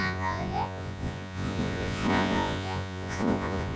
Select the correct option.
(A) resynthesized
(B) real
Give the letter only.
A